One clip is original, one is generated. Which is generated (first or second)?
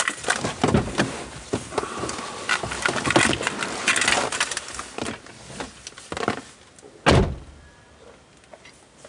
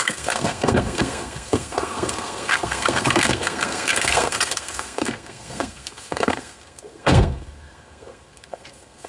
second